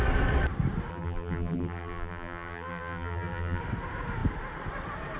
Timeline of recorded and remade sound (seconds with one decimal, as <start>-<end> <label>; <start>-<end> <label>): 0.0-0.9 recorded; 0.9-3.6 remade; 3.6-5.2 recorded